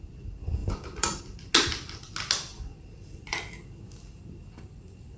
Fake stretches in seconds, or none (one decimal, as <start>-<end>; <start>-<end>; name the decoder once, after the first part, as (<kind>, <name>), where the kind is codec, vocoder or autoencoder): 0.6-1.2 (vocoder, BigVGAN v2); 2.5-3.5